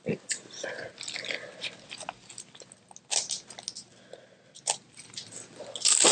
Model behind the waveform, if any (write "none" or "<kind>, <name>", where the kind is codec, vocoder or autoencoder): none